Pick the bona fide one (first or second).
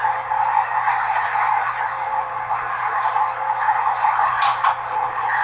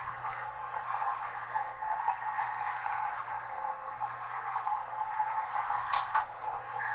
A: first